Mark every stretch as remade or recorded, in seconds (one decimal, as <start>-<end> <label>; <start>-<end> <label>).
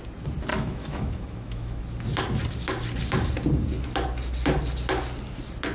0.0-0.5 recorded; 0.5-1.8 remade; 1.8-5.7 recorded